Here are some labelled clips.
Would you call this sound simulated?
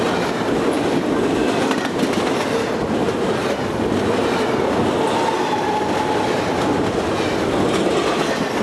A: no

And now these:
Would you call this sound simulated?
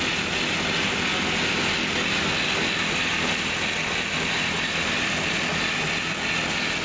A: no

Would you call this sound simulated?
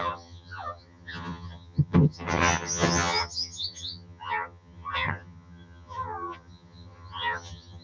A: yes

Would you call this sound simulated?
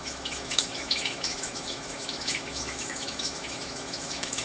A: yes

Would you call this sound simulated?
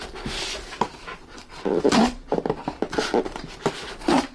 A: no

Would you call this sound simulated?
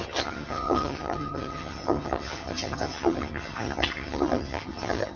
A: yes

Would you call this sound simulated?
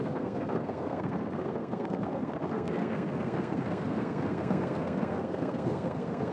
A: yes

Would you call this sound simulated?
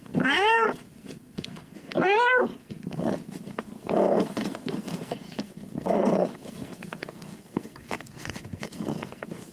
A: yes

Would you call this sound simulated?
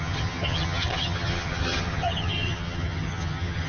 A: yes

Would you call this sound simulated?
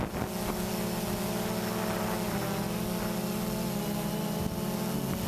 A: no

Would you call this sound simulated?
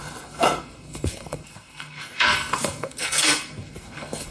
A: yes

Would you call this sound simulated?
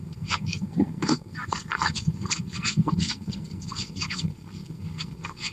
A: yes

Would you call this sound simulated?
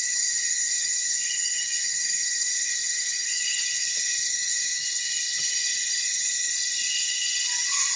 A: yes